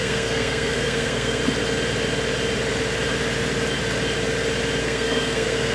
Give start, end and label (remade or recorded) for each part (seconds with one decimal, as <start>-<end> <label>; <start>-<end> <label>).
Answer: 0.0-1.4 remade; 1.4-4.8 recorded; 4.8-5.7 remade